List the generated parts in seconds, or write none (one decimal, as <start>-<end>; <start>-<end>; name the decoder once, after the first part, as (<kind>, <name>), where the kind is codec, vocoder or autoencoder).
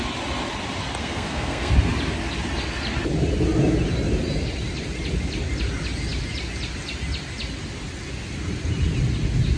1.0-1.7 (codec, SNAC)